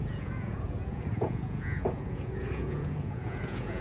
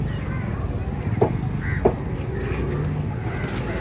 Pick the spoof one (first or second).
first